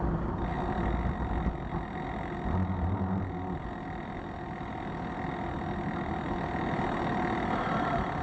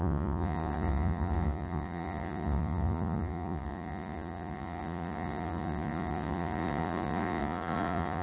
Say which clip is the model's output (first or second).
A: second